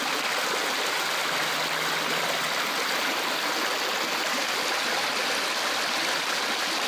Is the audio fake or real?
real